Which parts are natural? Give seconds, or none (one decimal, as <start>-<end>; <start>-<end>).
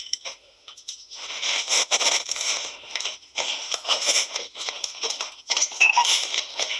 none